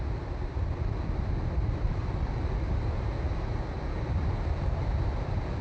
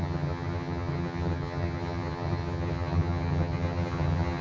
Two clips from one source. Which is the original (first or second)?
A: first